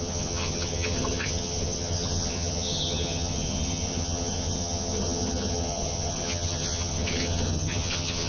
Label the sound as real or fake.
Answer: fake